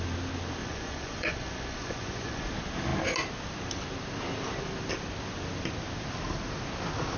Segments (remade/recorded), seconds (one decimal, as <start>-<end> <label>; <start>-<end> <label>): 0.0-0.6 recorded; 0.6-2.5 remade; 2.5-7.2 recorded